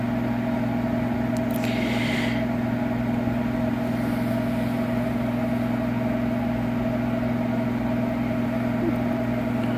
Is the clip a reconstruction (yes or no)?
no